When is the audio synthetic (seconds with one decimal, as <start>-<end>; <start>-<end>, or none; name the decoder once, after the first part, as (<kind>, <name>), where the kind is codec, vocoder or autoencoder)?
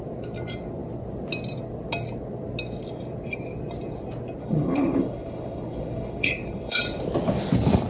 4.4-6.8 (codec, HILCodec)